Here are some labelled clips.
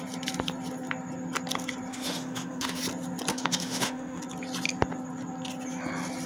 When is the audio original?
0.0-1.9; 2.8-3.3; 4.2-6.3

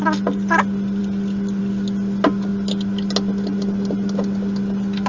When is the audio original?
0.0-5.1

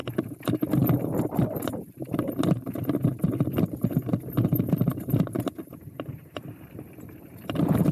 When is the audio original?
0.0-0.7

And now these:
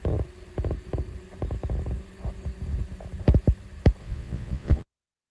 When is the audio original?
0.0-4.0

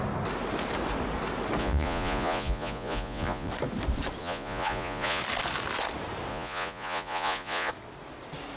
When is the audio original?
0.0-1.6; 3.5-4.2; 5.2-6.3; 7.7-8.6

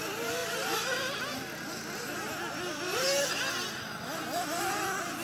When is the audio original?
0.0-5.2

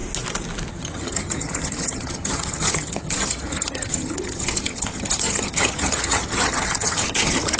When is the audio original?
0.0-0.7

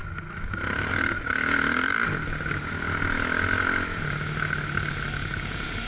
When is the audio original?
0.0-5.9